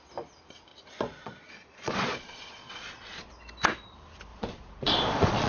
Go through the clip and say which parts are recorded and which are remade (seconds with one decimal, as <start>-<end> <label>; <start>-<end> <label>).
0.0-0.7 recorded; 0.7-3.3 remade; 3.3-4.3 recorded; 4.3-5.5 remade

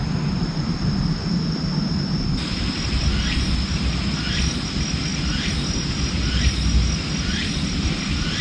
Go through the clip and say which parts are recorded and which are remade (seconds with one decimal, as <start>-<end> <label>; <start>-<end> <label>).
0.0-8.4 recorded